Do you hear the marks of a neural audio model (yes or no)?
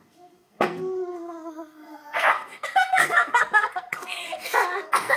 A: yes